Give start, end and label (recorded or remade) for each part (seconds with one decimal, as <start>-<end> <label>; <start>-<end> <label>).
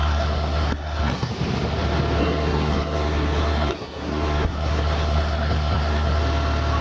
0.0-1.3 remade; 1.3-2.2 recorded; 2.2-6.2 remade; 6.2-6.8 recorded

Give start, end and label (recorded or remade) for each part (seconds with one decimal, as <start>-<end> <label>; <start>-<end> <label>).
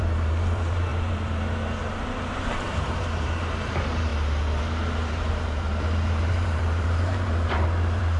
0.0-4.1 remade; 4.1-4.6 recorded; 4.6-8.2 remade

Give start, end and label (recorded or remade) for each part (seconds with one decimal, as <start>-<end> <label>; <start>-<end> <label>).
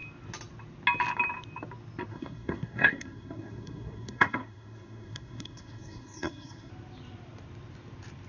0.0-2.1 recorded; 2.1-6.7 remade; 6.7-8.3 recorded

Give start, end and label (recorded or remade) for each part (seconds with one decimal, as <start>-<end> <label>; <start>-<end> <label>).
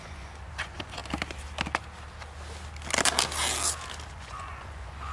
0.0-1.0 remade; 1.0-4.1 recorded; 4.1-5.1 remade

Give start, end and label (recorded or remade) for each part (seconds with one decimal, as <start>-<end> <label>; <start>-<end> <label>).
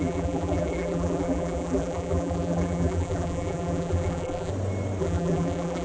0.0-4.5 remade; 4.5-5.0 recorded; 5.0-5.8 remade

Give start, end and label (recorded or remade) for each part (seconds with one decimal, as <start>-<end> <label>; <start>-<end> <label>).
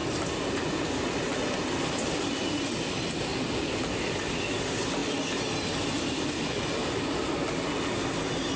0.0-8.6 recorded